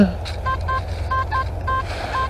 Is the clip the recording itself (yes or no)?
yes